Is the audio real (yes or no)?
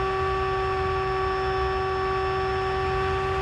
yes